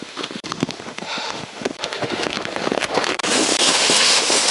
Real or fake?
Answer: fake